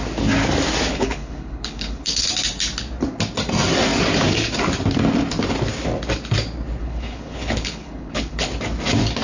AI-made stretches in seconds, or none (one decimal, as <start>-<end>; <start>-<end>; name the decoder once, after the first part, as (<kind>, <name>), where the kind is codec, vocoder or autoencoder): 0.9-2.3 (codec, HILCodec); 6.8-8.5